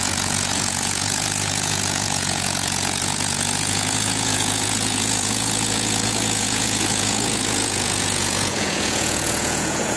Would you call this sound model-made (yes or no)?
yes